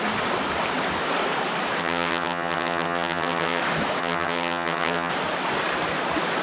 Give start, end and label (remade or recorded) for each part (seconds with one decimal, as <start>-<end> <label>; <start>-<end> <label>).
0.0-1.8 recorded; 1.8-3.6 remade; 3.6-4.0 recorded; 4.0-5.1 remade; 5.1-6.4 recorded